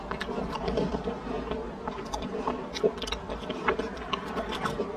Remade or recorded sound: recorded